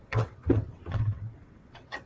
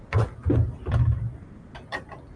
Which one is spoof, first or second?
first